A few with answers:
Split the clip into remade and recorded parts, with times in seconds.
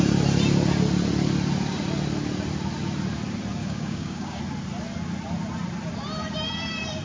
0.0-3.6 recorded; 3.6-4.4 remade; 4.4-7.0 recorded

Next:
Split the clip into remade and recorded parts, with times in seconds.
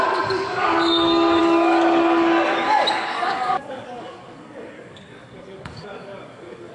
0.0-6.7 remade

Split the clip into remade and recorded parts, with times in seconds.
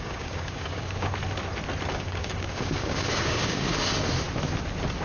0.0-1.1 remade; 1.1-1.9 recorded; 1.9-3.7 remade; 3.7-5.0 recorded